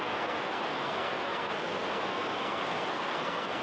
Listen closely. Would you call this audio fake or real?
fake